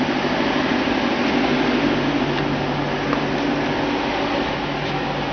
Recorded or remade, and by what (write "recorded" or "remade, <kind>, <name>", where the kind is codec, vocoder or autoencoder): recorded